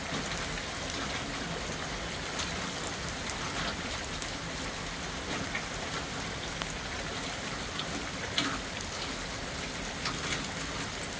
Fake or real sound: real